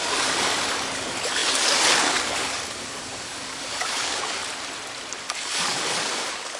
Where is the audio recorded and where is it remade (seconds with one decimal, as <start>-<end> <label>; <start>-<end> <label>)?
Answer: 0.0-4.4 remade; 4.4-5.2 recorded; 5.2-6.6 remade